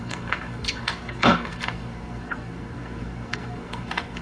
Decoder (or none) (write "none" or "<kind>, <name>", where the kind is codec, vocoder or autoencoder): codec, SNAC